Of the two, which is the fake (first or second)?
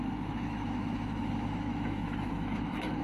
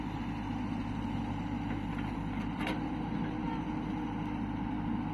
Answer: first